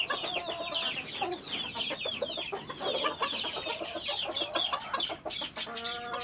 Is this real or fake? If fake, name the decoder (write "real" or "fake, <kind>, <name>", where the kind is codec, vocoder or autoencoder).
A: real